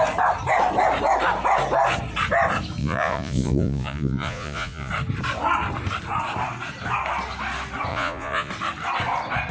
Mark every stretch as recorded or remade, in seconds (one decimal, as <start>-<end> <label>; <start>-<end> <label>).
0.0-2.8 recorded; 2.8-4.9 remade; 4.9-7.9 recorded; 7.9-8.5 remade; 8.5-9.5 recorded